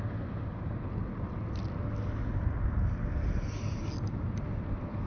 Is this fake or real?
real